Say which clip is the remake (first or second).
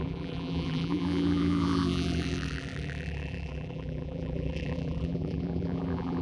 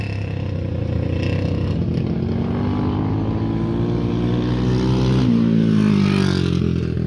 first